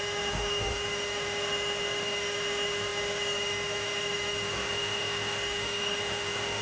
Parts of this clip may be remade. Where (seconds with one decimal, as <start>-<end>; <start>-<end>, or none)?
0.0-6.6